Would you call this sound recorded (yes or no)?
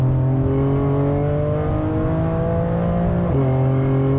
yes